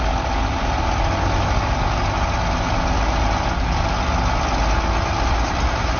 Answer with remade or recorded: recorded